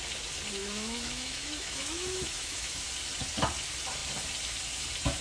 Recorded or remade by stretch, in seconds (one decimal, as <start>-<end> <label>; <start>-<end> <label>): 0.0-0.6 recorded; 0.6-2.9 remade; 2.9-5.2 recorded